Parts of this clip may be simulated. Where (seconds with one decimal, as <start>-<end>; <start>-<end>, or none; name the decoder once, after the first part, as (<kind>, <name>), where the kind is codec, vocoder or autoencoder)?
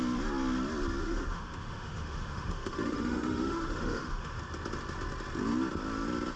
1.0-4.4 (autoencoder, DAC-VAE)